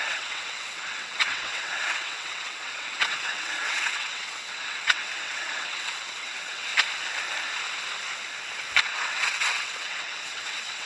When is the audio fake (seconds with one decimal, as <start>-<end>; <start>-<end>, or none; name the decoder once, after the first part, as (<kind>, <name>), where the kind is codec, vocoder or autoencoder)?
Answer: 0.0-6.7 (vocoder, WaveNeXt); 8.8-10.9